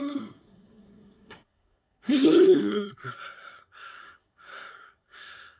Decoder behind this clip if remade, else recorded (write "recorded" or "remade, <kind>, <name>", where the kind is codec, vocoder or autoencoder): remade, codec, SNAC